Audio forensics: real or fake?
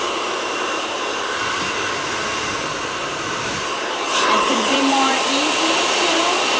fake